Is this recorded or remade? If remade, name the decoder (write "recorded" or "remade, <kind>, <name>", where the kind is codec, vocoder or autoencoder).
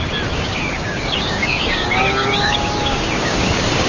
remade, codec, DAC